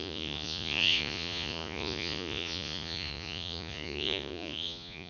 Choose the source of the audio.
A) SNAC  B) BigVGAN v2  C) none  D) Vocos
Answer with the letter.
D